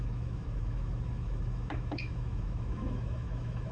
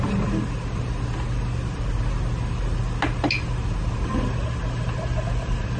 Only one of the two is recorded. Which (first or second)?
second